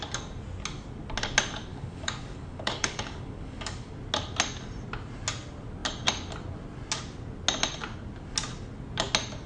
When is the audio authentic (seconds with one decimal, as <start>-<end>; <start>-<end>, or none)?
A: 0.0-1.7; 3.9-9.5